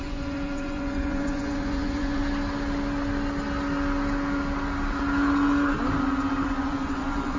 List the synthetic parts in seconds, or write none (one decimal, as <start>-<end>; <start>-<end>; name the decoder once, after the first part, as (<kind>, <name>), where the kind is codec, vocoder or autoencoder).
0.0-2.2 (vocoder, Vocos); 6.6-7.4